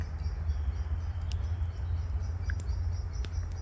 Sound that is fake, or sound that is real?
real